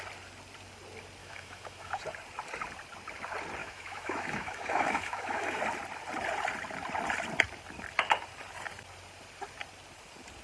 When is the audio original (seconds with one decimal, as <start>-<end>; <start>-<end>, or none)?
0.0-1.2; 2.0-3.6; 5.6-10.4